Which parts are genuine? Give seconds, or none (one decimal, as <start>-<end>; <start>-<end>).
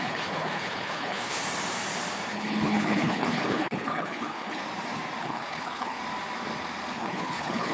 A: 1.4-2.3; 4.6-5.2; 6.0-6.9